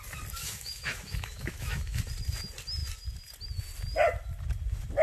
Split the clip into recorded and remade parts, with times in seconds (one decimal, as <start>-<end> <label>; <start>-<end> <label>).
0.0-0.4 recorded; 0.4-2.0 remade; 2.0-5.0 recorded